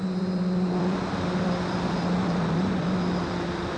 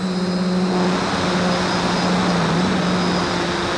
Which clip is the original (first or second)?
second